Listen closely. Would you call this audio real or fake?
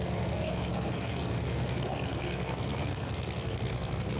fake